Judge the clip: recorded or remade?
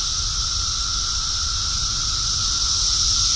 recorded